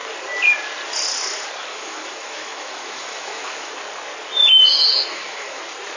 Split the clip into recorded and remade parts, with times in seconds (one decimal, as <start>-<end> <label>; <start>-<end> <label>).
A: 0.0-1.7 recorded; 1.7-3.7 remade; 3.7-5.1 recorded; 5.1-5.6 remade; 5.6-6.0 recorded